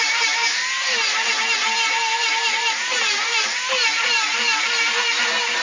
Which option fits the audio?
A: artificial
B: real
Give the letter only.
A